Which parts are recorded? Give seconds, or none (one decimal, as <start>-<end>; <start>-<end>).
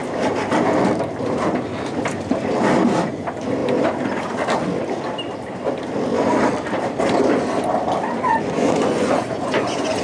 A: 0.0-8.3